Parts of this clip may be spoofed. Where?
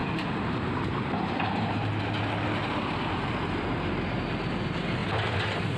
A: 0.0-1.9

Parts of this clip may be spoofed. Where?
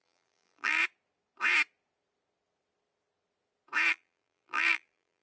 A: 0.0-0.8; 3.9-5.2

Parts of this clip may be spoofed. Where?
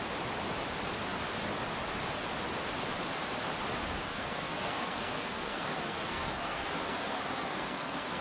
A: 4.1-8.2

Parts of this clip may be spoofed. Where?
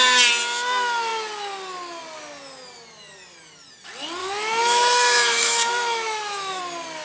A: 4.2-6.6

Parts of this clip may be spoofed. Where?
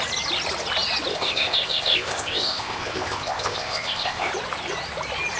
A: 1.1-4.3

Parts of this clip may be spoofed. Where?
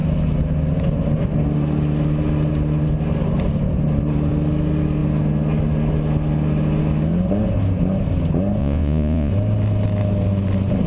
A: 8.6-9.3